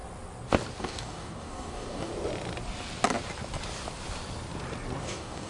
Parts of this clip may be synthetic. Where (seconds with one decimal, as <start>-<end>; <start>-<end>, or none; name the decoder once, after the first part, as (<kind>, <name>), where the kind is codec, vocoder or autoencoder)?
0.8-2.1 (codec, DAC); 5.0-5.5